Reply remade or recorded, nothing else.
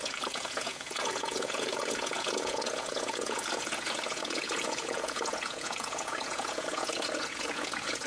remade